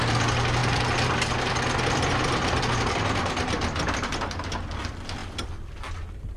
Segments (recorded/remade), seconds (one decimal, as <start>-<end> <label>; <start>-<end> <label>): 0.0-6.4 recorded